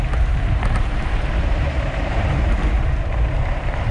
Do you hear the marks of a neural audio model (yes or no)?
yes